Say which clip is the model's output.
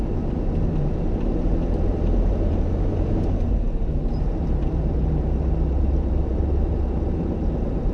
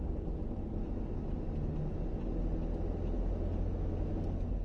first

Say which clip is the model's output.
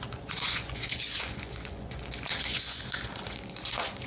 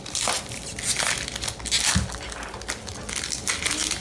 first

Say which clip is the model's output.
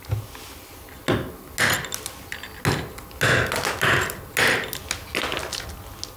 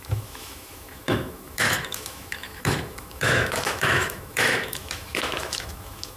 second